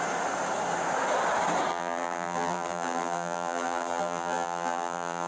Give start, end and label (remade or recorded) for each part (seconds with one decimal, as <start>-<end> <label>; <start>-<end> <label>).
0.0-1.7 recorded; 1.7-5.3 remade